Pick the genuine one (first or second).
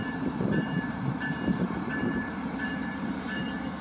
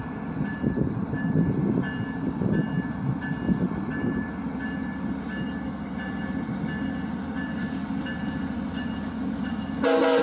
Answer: second